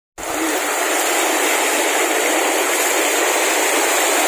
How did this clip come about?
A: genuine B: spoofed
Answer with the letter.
A